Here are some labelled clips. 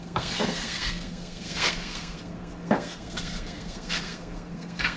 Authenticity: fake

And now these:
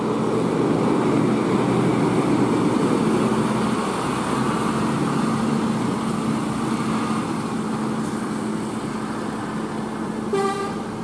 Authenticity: real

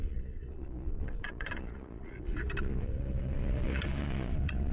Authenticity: fake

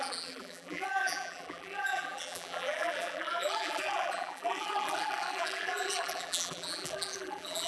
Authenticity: fake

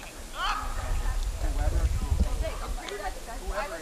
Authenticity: real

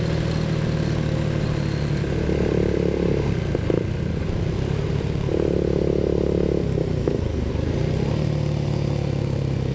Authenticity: real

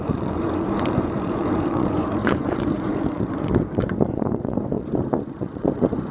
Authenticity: fake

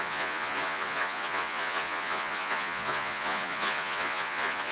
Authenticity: fake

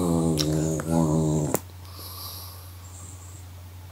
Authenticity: real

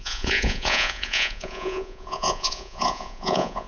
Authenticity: fake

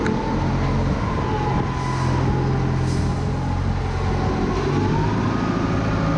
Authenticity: real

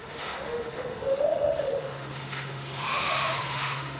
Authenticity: fake